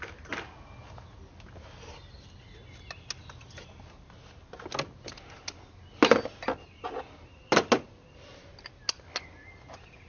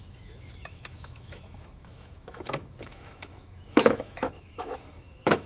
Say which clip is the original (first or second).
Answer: first